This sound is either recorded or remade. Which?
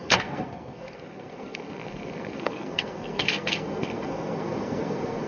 remade